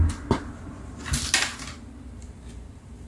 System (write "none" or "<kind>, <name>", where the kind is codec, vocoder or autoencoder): none